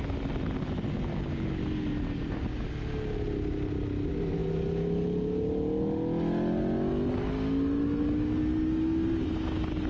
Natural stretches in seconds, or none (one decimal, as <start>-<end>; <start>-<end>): 0.0-1.1; 1.6-9.9